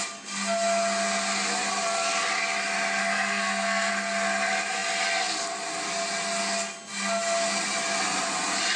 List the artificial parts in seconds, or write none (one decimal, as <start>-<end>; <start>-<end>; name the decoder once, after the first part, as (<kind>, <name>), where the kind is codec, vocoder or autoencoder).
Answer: 3.0-3.9 (codec, SNAC)